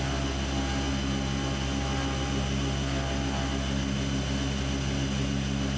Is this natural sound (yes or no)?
yes